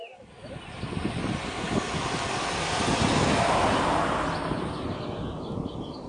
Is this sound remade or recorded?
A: recorded